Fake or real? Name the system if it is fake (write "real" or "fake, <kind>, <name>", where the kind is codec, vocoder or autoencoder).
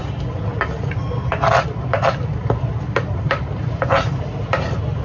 real